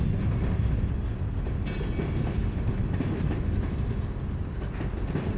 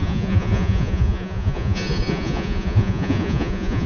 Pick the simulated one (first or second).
second